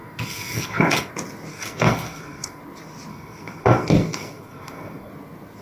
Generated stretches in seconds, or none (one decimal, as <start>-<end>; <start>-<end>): 0.0-1.1; 1.5-2.6; 3.1-5.1